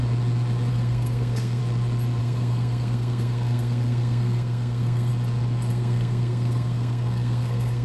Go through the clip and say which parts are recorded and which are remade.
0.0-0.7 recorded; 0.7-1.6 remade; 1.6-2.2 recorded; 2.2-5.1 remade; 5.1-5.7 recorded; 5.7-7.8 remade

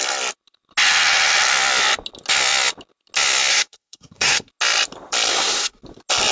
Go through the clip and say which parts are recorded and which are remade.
0.0-3.5 recorded; 3.5-4.5 remade; 4.5-5.3 recorded; 5.3-5.8 remade; 5.8-6.3 recorded

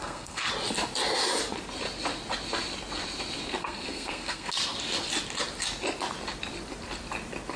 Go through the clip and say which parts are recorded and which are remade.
0.0-0.5 remade; 0.5-3.6 recorded; 3.6-4.5 remade; 4.5-7.6 recorded

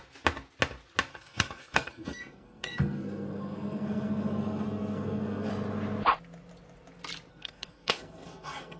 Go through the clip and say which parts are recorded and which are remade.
0.0-1.1 recorded; 1.1-5.5 remade; 5.5-7.3 recorded; 7.3-8.8 remade

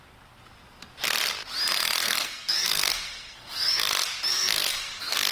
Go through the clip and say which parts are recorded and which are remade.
0.0-2.0 recorded; 2.0-3.9 remade; 3.9-4.3 recorded; 4.3-5.3 remade

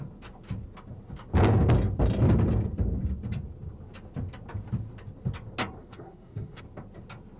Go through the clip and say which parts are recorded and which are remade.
0.0-5.8 recorded; 5.8-6.6 remade; 6.6-7.4 recorded

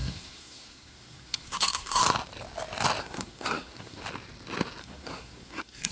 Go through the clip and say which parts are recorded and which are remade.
0.0-2.0 remade; 2.0-3.0 recorded; 3.0-4.0 remade; 4.0-4.8 recorded; 4.8-5.9 remade

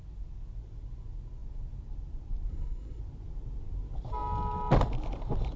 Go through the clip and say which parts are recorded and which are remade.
0.0-2.5 recorded; 2.5-3.0 remade; 3.0-5.6 recorded